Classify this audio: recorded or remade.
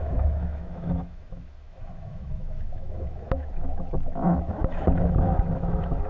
remade